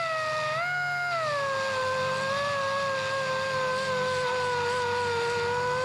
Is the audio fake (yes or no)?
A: no